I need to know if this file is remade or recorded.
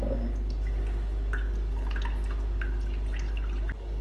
recorded